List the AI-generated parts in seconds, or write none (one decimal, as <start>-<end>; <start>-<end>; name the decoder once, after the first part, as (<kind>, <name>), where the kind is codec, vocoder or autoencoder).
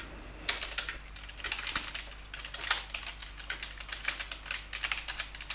none